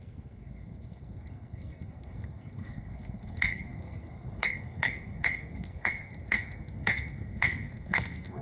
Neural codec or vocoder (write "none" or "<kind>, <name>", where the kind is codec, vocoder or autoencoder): codec, SNAC